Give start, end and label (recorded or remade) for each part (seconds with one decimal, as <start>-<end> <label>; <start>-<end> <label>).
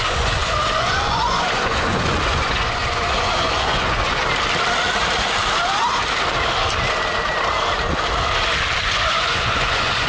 0.0-4.2 remade; 4.2-8.8 recorded; 8.8-10.1 remade